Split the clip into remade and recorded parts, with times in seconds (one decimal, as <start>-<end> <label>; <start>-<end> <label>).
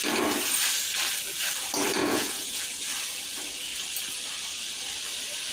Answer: 0.0-2.0 recorded; 2.0-2.6 remade; 2.6-5.5 recorded